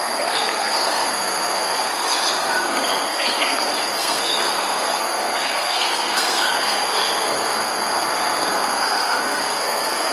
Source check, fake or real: fake